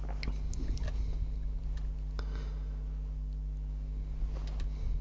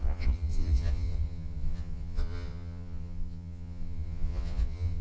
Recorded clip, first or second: first